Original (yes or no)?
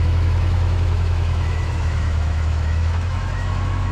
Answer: no